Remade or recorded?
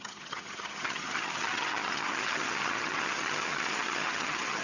remade